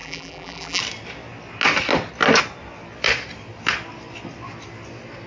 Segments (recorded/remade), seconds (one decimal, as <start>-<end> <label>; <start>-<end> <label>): 0.0-0.8 remade; 0.8-5.3 recorded